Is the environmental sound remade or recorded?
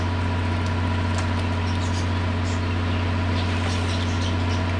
recorded